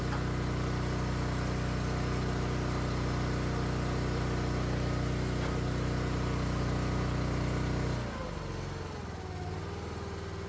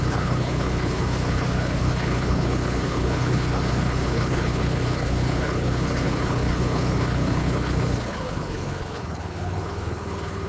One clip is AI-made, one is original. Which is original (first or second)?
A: first